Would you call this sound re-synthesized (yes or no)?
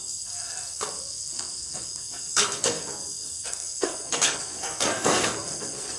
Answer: yes